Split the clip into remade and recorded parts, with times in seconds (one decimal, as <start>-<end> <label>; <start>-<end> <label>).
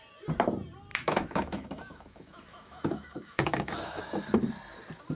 0.0-0.9 recorded; 0.9-4.0 remade; 4.0-5.1 recorded